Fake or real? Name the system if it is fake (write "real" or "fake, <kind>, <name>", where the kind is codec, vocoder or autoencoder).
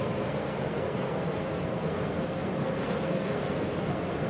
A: fake, codec, SNAC